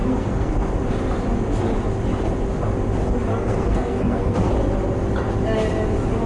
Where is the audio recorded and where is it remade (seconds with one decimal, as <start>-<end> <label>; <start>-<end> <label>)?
0.0-0.5 remade; 0.5-3.3 recorded; 3.3-4.5 remade; 4.5-6.3 recorded